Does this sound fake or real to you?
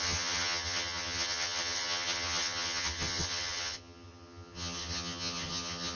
fake